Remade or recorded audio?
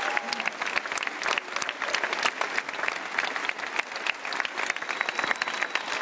recorded